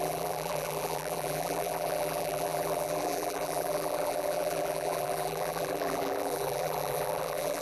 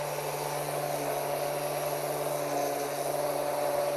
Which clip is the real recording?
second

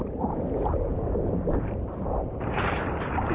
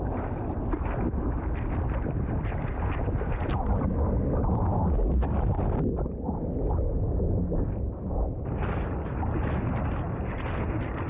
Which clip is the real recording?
second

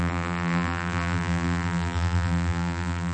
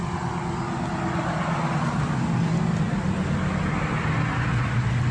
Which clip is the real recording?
second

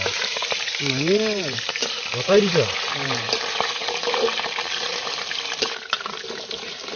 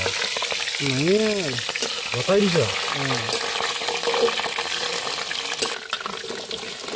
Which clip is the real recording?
second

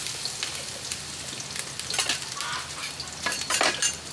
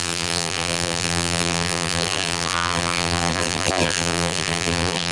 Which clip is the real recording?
first